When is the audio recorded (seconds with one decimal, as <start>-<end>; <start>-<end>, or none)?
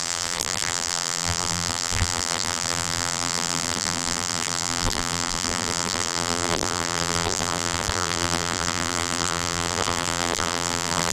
none